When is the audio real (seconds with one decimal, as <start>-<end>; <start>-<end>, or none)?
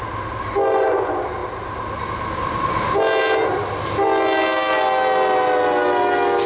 0.0-6.5